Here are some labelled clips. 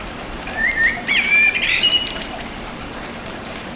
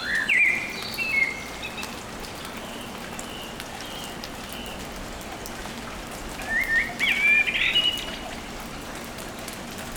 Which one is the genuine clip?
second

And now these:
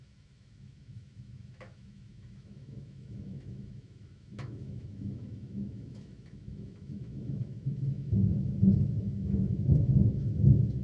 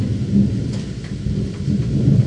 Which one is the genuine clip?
second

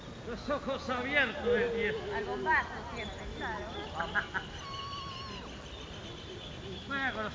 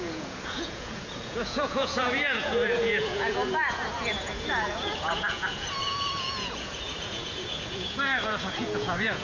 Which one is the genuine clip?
first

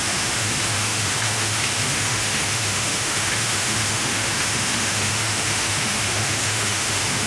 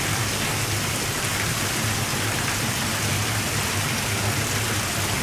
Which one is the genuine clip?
second